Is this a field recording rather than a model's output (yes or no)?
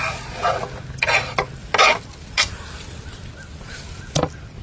yes